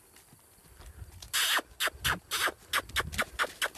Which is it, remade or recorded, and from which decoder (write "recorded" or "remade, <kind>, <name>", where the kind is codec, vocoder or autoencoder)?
recorded